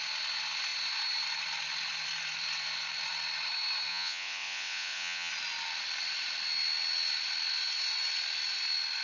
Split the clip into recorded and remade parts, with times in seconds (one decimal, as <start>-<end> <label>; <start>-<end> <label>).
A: 0.0-3.9 recorded; 3.9-5.3 remade; 5.3-9.0 recorded